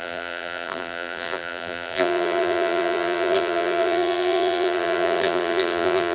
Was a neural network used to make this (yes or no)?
yes